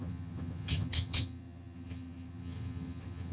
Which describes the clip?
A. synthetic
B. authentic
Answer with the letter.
A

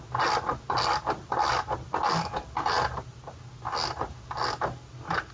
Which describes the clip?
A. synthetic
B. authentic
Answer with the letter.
B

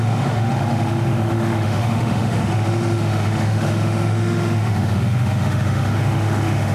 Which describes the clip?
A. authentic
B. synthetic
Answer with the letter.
B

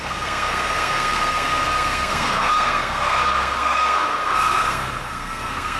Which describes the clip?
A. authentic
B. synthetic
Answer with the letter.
B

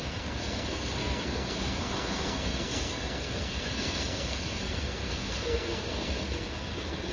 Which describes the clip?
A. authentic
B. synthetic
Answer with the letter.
B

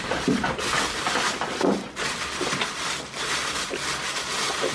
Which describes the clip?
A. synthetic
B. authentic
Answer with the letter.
B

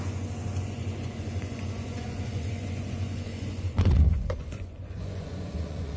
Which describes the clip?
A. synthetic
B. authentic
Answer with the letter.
A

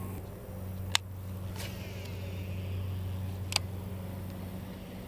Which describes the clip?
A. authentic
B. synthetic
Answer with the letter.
A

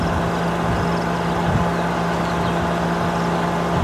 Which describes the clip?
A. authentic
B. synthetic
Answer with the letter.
A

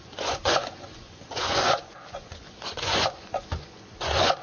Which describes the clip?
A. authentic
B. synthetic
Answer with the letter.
B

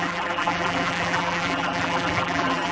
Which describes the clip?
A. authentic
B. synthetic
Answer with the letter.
B